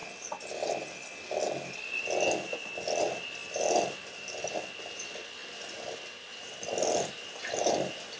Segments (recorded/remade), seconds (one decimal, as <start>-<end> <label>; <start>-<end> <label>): 0.0-3.0 recorded; 3.0-8.2 remade